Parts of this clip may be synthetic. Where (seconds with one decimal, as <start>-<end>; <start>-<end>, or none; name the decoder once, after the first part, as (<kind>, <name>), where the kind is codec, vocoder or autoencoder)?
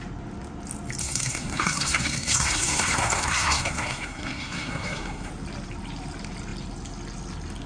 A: 1.0-5.3 (codec, SNAC)